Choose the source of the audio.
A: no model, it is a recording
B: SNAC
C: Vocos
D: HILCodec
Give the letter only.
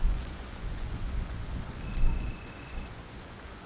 C